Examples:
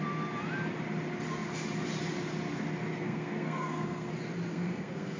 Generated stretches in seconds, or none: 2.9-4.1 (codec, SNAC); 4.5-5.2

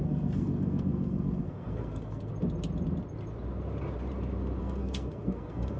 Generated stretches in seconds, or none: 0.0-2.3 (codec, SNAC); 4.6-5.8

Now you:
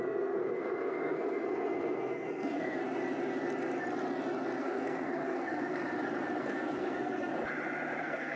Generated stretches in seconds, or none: 0.0-2.8 (codec, SNAC); 4.6-5.8; 6.4-7.3; 8.0-8.4